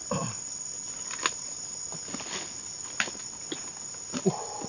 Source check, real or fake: real